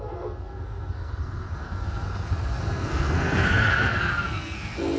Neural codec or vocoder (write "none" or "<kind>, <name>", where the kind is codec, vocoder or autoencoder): codec, SNAC